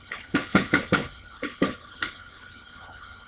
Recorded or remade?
remade